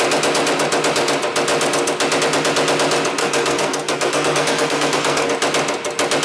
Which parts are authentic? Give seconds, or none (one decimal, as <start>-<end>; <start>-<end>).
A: 0.0-3.2; 5.3-6.2